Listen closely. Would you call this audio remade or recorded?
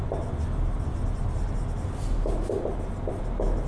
recorded